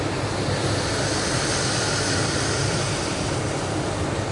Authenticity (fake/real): real